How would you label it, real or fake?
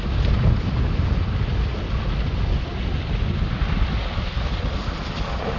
real